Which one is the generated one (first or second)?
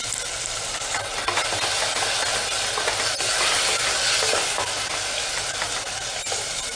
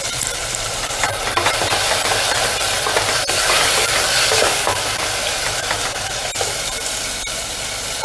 second